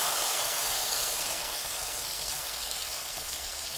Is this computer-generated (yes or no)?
yes